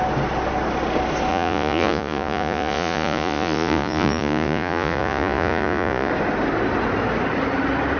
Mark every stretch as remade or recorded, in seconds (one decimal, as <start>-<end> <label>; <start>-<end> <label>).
0.0-1.3 recorded; 1.3-6.1 remade; 6.1-8.0 recorded